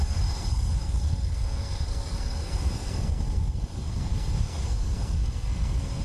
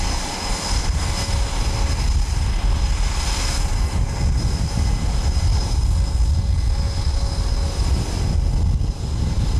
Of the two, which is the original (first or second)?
second